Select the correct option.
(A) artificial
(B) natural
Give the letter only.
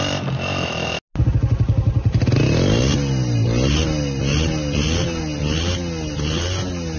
B